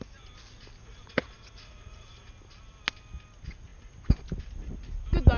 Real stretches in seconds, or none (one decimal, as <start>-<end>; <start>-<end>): 0.0-0.8; 2.3-5.4